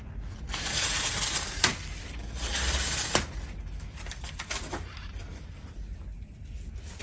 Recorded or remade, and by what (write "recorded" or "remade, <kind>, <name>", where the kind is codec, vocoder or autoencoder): recorded